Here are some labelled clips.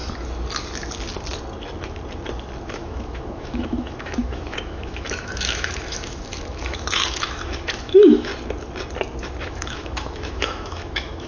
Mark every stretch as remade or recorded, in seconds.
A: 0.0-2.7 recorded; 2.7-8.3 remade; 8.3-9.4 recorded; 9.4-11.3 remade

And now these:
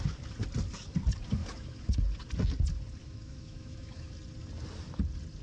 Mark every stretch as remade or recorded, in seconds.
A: 0.0-1.4 recorded; 1.4-1.9 remade; 1.9-3.0 recorded; 3.0-4.1 remade; 4.1-5.4 recorded

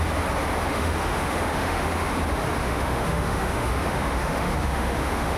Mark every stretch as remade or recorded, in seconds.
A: 0.0-0.7 recorded; 0.7-2.1 remade; 2.1-2.6 recorded; 2.6-5.4 remade

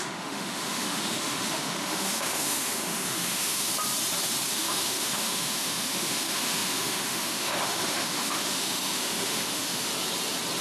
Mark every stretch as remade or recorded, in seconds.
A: 0.0-3.7 remade; 3.7-4.5 recorded; 4.5-9.9 remade; 9.9-10.6 recorded